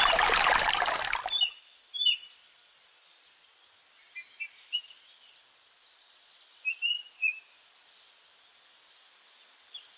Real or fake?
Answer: real